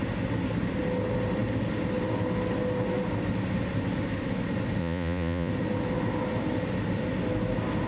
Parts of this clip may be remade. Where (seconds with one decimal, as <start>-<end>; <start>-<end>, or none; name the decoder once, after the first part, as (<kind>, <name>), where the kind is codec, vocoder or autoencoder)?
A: 4.8-5.5 (vocoder, Vocos)